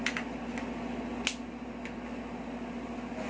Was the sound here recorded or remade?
recorded